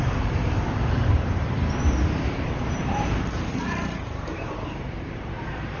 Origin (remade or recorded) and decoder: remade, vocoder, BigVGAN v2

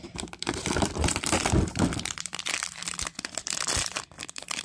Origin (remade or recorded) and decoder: remade, vocoder, BigVGAN v2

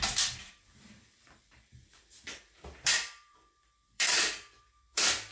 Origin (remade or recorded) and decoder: remade, vocoder, BigVGAN v2